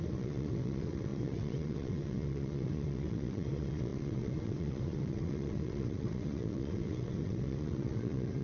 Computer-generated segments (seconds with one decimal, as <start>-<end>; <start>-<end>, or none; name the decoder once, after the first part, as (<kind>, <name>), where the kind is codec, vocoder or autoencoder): 0.0-8.4 (vocoder, WaveNeXt)